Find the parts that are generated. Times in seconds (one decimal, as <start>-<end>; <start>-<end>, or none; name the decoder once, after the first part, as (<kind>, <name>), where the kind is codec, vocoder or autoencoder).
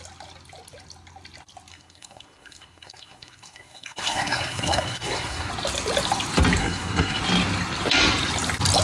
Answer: 1.7-5.5 (codec, SNAC); 6.6-7.2